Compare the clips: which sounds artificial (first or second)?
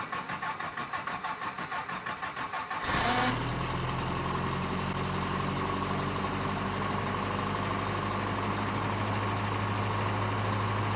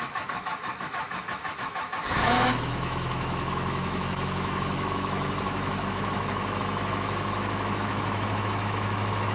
second